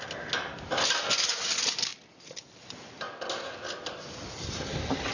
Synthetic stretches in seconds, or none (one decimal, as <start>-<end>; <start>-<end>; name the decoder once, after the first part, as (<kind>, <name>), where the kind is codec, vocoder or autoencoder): none